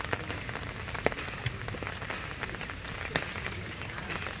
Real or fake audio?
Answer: real